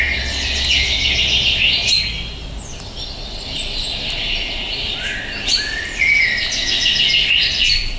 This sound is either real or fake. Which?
real